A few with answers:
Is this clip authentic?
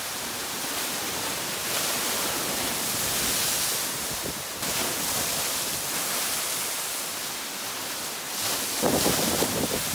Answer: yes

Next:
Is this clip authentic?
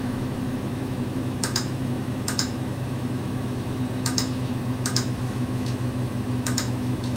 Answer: no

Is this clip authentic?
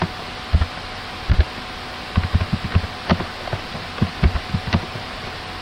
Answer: yes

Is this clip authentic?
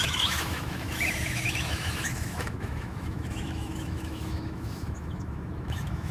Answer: no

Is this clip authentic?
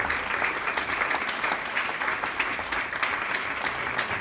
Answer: yes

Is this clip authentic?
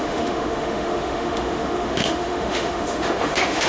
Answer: no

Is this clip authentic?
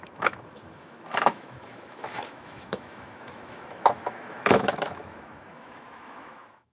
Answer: no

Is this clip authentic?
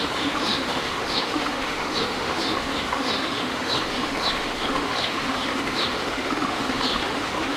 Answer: no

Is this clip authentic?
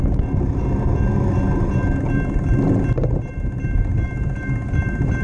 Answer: yes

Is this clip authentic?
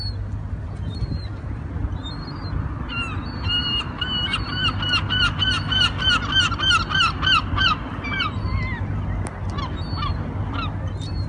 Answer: yes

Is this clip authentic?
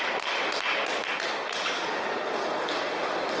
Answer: yes